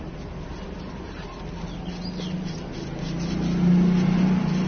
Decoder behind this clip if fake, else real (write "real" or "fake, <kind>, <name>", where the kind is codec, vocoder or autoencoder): real